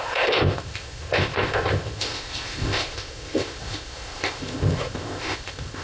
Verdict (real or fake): fake